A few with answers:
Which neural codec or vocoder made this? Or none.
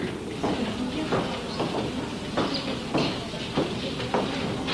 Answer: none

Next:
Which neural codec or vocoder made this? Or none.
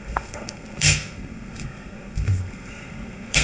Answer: codec, SNAC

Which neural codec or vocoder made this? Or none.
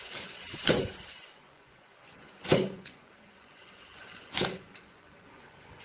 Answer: vocoder, Vocos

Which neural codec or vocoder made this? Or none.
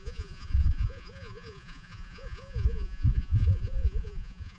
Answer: vocoder, Vocos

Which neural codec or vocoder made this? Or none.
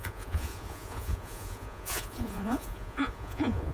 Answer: vocoder, Vocos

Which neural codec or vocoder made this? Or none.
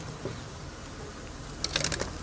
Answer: none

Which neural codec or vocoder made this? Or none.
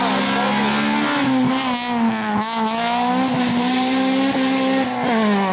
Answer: none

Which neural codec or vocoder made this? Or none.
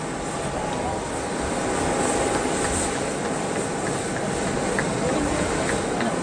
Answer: none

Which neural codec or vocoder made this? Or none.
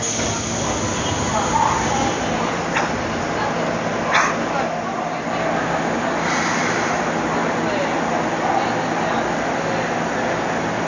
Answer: none